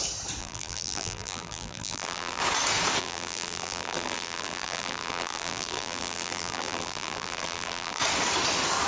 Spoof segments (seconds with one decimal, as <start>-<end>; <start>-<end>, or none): 0.4-2.4; 3.0-8.0

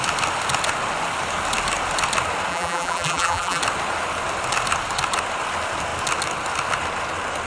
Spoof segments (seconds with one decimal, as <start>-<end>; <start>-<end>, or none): 2.5-3.6

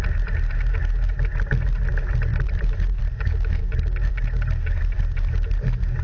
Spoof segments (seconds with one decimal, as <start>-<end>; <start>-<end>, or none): 2.3-3.0